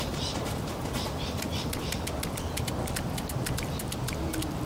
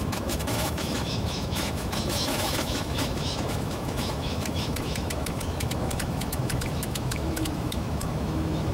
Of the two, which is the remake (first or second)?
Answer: second